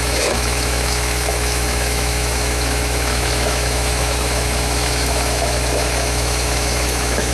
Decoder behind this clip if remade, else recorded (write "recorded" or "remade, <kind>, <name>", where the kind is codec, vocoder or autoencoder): remade, autoencoder, DAC-VAE